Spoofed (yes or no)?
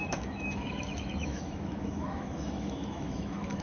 yes